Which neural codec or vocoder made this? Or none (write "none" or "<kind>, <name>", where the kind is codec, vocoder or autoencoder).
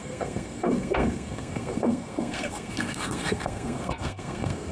codec, SNAC